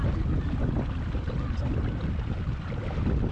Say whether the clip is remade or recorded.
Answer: recorded